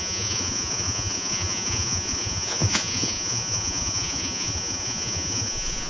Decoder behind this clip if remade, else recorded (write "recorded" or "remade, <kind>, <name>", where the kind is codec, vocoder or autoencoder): remade, vocoder, Vocos